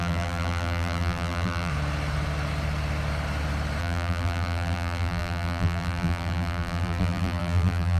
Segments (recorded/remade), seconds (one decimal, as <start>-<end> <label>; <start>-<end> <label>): 0.0-1.7 remade; 1.7-3.8 recorded; 3.8-8.0 remade